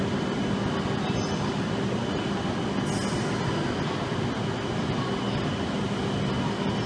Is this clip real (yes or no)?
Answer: yes